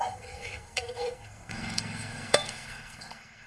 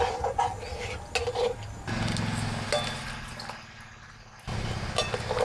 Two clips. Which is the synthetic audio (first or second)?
first